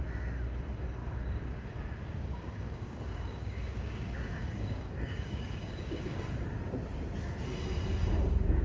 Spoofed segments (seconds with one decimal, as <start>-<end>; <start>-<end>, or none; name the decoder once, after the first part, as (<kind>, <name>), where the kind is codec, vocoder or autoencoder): 1.0-6.2 (codec, DAC)